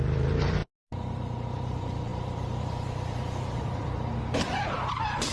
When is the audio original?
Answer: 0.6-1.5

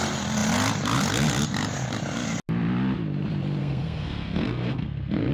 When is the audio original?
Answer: 0.0-3.6

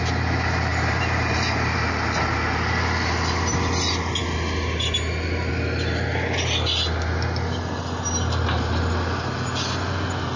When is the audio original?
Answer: 0.0-0.7; 1.9-10.4